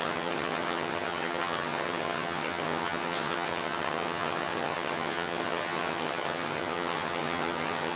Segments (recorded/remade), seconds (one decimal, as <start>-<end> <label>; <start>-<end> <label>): 0.0-8.0 remade